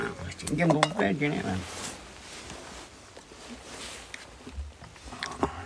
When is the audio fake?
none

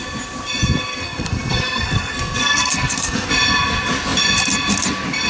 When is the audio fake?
0.9-3.3 (codec, SNAC)